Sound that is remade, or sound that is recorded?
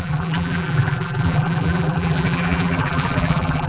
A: remade